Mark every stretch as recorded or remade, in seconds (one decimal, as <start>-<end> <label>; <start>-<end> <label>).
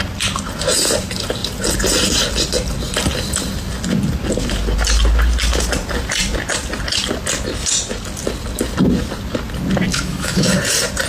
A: 0.0-9.9 recorded; 9.9-10.6 remade; 10.6-11.1 recorded